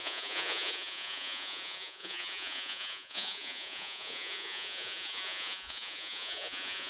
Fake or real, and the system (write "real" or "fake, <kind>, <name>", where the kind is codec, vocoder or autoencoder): fake, vocoder, Vocos